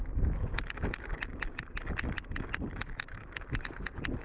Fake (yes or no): no